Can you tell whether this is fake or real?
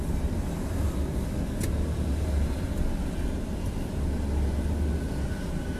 real